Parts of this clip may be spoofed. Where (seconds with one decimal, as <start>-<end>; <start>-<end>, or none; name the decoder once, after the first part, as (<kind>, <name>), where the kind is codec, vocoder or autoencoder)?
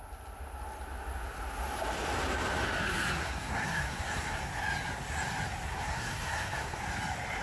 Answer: 3.2-4.4 (codec, SNAC); 5.7-6.8